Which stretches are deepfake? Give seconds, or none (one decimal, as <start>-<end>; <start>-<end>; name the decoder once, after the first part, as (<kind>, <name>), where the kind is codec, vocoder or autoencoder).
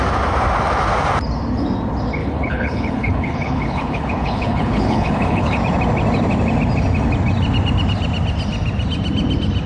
2.2-5.6 (codec, HILCodec)